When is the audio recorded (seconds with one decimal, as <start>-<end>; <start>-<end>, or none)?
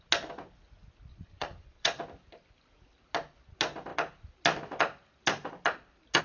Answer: 0.0-1.1; 2.0-6.2